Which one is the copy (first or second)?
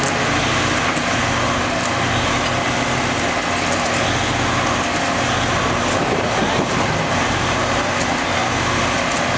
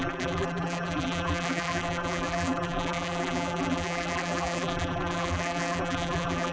second